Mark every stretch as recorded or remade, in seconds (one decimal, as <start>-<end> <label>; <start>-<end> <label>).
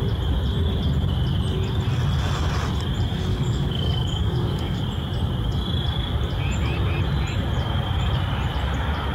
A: 0.0-3.3 recorded; 3.3-4.8 remade; 4.8-9.1 recorded